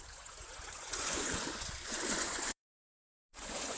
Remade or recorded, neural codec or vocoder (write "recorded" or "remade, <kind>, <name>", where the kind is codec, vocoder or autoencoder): remade, vocoder, Vocos